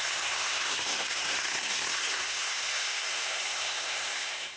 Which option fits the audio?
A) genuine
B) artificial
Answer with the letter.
B